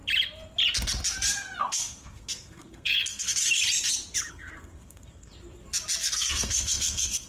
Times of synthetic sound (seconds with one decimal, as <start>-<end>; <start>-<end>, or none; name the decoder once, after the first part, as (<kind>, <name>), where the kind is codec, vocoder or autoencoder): 1.6-3.4 (codec, SNAC); 4.3-5.3; 6.0-7.3